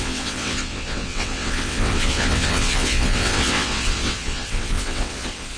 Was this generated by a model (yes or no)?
yes